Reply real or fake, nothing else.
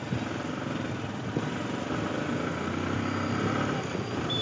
real